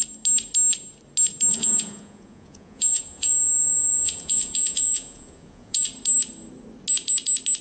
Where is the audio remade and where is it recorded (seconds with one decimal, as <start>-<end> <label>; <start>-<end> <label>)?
0.0-1.5 recorded; 1.5-5.9 remade; 5.9-7.6 recorded